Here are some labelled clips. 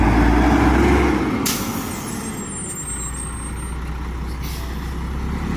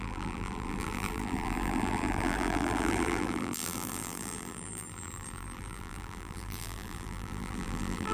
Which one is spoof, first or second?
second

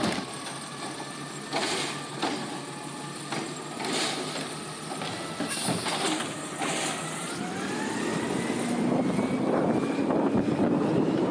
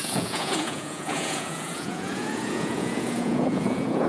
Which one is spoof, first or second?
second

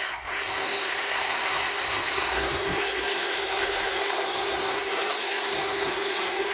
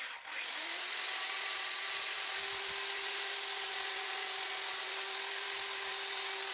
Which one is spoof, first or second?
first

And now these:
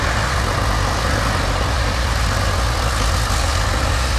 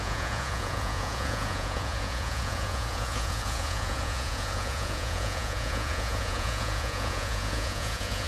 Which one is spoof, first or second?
second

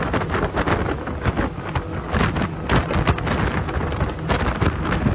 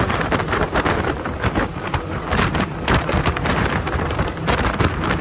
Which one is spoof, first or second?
second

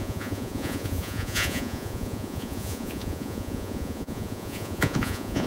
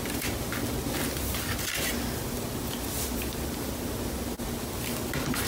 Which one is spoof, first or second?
first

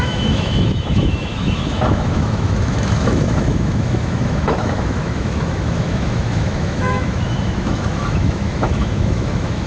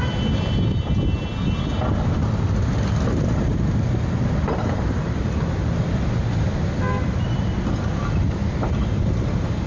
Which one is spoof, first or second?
first